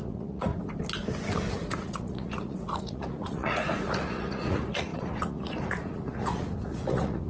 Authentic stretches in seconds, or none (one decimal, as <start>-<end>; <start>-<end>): 0.5-1.5